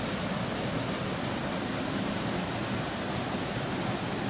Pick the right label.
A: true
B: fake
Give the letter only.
A